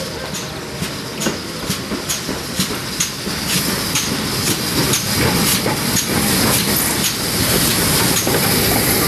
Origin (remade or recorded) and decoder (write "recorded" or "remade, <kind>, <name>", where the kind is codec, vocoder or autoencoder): recorded